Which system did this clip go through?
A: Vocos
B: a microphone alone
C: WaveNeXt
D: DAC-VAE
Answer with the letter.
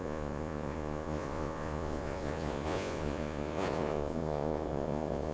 A